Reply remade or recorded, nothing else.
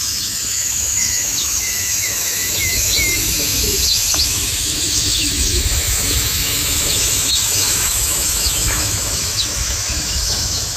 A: remade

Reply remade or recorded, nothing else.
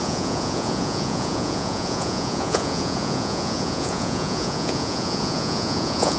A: remade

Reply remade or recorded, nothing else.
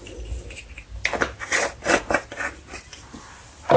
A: recorded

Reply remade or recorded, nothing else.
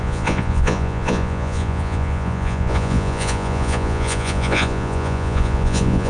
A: remade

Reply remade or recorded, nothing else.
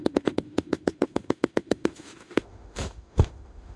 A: remade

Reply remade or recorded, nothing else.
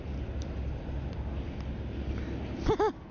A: recorded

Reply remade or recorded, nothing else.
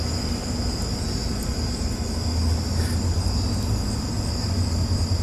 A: recorded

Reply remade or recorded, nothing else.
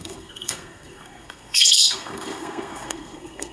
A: remade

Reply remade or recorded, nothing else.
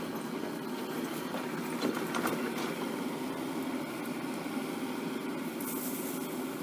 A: recorded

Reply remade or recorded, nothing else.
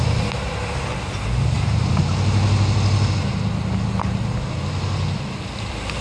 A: recorded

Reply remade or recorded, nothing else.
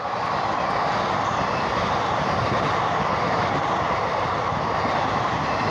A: recorded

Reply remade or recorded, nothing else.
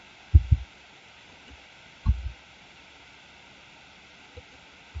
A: recorded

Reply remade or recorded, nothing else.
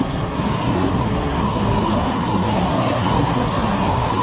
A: remade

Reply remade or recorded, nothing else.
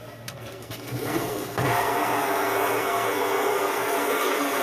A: remade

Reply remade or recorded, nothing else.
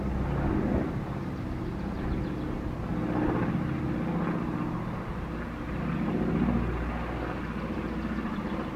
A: recorded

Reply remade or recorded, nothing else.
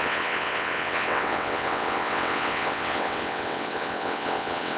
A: remade